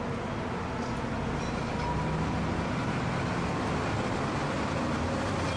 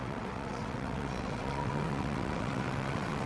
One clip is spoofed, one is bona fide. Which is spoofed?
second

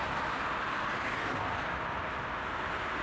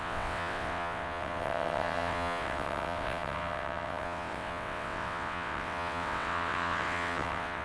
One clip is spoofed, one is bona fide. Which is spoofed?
second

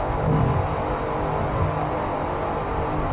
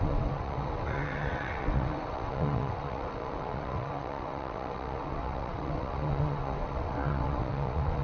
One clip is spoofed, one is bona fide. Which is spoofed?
second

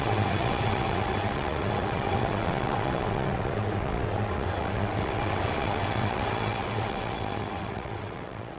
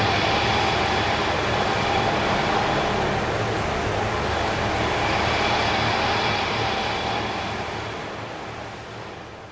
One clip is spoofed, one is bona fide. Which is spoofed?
first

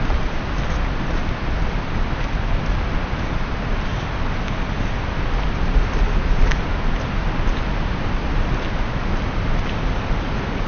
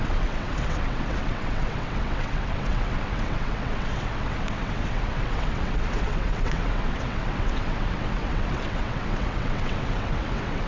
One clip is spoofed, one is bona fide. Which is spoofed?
second